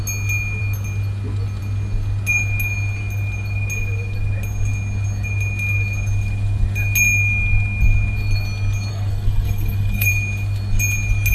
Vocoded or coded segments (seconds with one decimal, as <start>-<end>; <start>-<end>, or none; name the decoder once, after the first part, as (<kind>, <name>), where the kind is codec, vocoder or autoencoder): 8.9-10.1 (codec, SNAC)